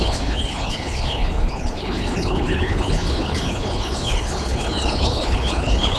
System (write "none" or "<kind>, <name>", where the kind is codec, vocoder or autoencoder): codec, HILCodec